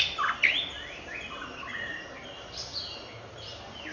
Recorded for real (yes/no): yes